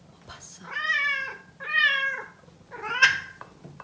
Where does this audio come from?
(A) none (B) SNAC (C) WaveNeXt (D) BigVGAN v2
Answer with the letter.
A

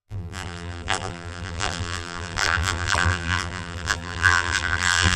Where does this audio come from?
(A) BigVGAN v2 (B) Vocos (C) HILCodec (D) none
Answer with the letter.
A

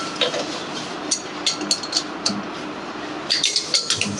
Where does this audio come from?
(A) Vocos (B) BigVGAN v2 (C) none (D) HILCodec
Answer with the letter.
C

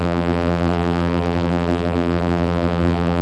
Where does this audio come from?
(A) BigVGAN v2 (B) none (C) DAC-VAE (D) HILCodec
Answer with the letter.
A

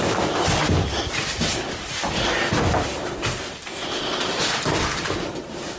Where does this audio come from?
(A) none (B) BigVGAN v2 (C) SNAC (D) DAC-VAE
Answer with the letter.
B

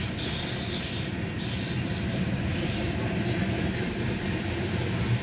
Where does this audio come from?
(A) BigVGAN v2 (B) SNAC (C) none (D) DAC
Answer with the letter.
C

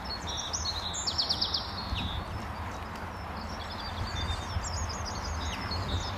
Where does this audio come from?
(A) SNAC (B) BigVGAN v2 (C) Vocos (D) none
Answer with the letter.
D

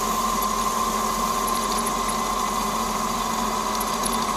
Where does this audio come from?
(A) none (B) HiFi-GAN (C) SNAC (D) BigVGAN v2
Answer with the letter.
A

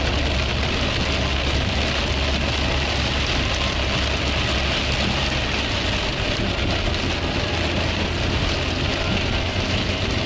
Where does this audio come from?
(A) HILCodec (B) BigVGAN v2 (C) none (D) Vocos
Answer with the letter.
C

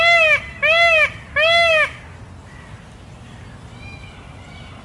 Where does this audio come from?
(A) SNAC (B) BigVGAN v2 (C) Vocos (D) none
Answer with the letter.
D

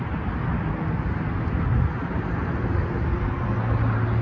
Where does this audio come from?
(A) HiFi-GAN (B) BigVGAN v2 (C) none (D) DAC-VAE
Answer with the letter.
C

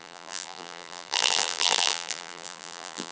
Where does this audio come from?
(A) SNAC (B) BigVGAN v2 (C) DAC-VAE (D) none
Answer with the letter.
B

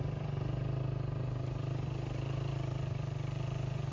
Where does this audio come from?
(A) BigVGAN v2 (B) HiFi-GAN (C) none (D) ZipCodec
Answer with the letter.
C